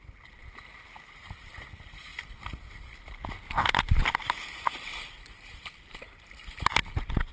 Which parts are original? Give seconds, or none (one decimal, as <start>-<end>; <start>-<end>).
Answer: 0.0-7.3